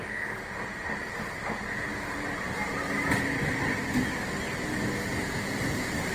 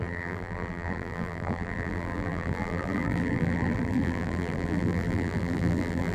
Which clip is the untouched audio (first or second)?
first